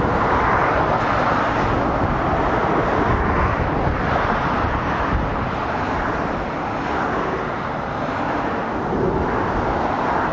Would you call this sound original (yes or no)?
yes